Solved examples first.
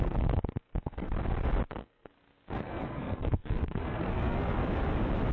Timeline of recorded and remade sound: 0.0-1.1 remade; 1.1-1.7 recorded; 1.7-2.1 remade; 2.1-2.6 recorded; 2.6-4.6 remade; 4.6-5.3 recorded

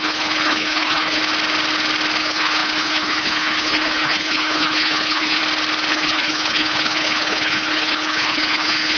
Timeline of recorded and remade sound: 0.0-1.2 remade; 1.2-2.2 recorded; 2.2-5.4 remade; 5.4-5.9 recorded; 5.9-9.0 remade

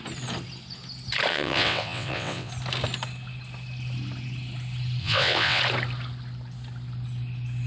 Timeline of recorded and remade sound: 0.0-1.3 recorded; 1.3-2.5 remade; 2.5-5.0 recorded; 5.0-5.6 remade; 5.6-7.7 recorded